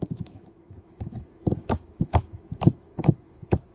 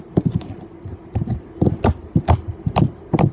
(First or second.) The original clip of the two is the second